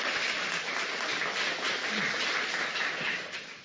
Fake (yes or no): no